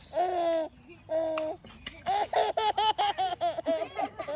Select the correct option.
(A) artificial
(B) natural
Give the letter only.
B